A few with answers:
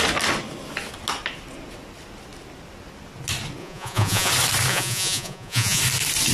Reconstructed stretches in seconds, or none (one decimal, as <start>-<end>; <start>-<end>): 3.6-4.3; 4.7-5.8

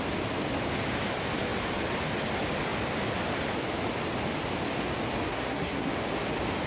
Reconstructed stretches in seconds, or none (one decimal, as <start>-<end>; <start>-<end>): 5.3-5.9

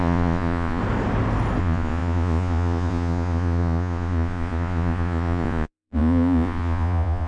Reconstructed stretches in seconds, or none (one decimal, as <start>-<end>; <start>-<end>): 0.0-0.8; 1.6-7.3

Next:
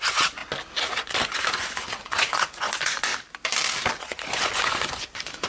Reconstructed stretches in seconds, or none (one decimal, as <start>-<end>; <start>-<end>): 0.0-0.4; 1.0-3.1; 4.0-5.5